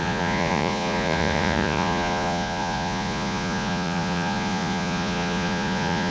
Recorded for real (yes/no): no